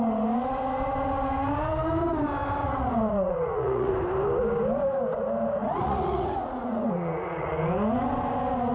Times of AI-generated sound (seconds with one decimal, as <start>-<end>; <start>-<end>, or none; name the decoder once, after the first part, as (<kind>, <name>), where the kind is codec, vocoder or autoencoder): 2.6-3.9 (vocoder, Vocos); 5.6-7.6